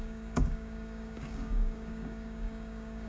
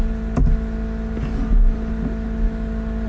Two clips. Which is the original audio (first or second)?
second